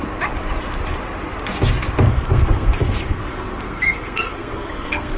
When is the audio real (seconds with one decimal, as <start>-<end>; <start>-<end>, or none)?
0.0-2.1